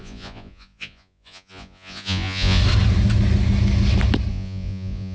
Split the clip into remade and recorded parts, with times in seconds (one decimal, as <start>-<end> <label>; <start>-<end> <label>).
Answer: 0.0-2.6 remade; 2.6-4.3 recorded; 4.3-5.1 remade